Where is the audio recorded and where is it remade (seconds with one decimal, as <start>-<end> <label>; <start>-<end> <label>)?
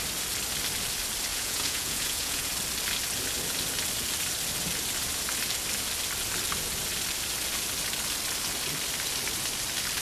0.0-1.3 recorded; 1.3-2.5 remade; 2.5-10.0 recorded